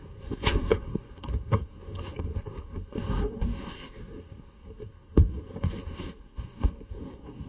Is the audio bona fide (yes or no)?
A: no